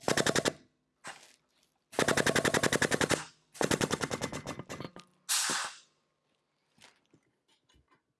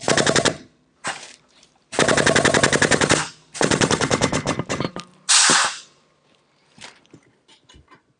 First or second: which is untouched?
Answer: first